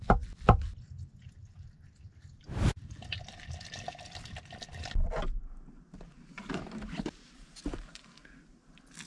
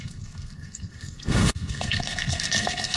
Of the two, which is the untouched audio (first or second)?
first